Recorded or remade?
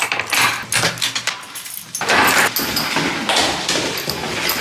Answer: recorded